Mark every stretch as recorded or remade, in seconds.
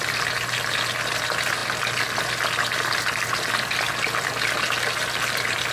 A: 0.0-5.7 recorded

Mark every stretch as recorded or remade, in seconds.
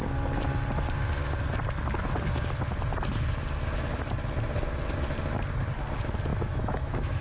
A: 0.0-6.3 recorded; 6.3-7.2 remade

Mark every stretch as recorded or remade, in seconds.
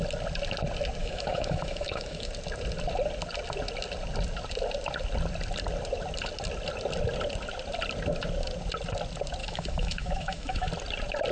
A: 0.0-1.0 recorded; 1.0-2.3 remade; 2.3-9.4 recorded; 9.4-10.7 remade; 10.7-11.3 recorded